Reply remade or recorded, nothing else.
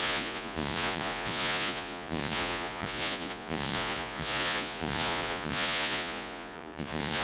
remade